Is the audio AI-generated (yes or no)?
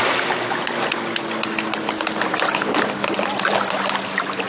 no